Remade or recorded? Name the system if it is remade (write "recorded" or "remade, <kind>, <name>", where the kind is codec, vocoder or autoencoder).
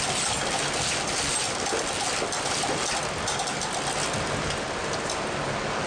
recorded